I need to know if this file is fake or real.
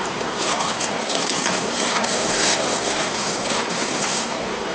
fake